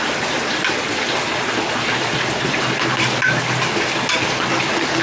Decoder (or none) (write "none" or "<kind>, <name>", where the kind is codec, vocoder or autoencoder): none